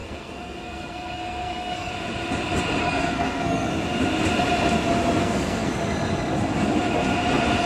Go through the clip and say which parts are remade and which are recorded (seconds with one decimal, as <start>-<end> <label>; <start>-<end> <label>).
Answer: 0.0-1.9 remade; 1.9-2.8 recorded; 2.8-3.7 remade; 3.7-5.2 recorded; 5.2-5.7 remade; 5.7-7.7 recorded